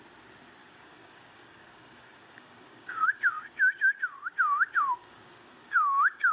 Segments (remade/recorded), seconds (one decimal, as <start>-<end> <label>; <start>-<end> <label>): 0.0-0.6 recorded; 0.6-3.4 remade; 3.4-5.0 recorded; 5.0-6.3 remade